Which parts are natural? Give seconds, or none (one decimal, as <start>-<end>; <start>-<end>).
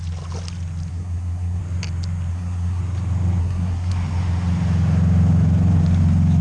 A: 0.0-0.9; 1.6-2.3; 2.8-3.4; 3.9-6.4